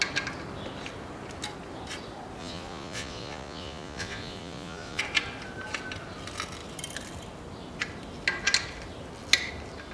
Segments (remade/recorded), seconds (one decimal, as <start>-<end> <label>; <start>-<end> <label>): 0.0-2.4 recorded; 2.4-5.0 remade; 5.0-9.9 recorded